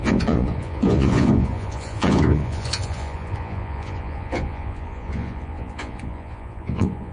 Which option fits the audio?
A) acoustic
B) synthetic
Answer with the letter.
B